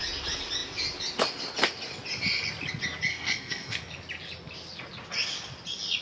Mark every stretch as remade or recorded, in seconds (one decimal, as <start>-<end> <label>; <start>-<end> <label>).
0.0-3.1 recorded; 3.1-3.8 remade; 3.8-6.0 recorded